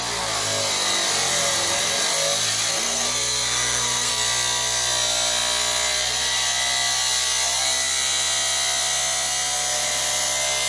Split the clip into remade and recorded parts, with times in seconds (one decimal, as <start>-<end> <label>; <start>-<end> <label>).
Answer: 0.0-2.7 recorded; 2.7-4.1 remade; 4.1-10.7 recorded